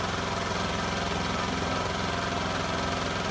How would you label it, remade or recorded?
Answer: recorded